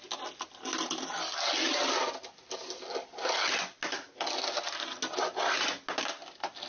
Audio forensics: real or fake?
real